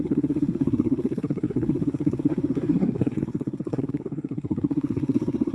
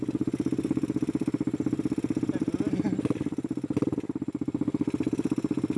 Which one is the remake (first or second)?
first